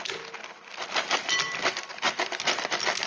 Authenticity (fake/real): real